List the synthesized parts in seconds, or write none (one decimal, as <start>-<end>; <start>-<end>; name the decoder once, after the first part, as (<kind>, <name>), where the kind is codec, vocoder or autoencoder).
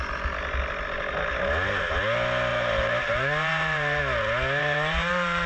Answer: 2.5-4.0 (vocoder, BigVGAN v2); 4.6-5.5